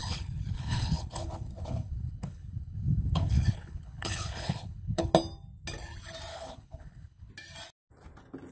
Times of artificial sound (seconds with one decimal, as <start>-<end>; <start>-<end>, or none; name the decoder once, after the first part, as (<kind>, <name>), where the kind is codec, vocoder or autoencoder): 0.0-5.1 (codec, HILCodec); 6.3-7.3